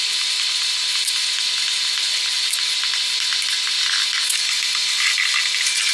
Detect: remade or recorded recorded